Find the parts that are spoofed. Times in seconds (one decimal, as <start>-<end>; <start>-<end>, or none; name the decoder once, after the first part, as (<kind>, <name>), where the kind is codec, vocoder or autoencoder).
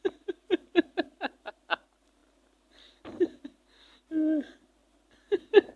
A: none